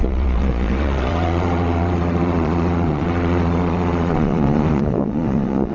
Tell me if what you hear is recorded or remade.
remade